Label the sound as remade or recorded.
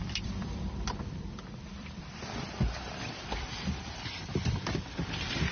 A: remade